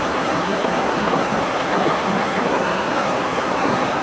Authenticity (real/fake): fake